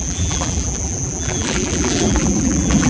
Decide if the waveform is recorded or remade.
remade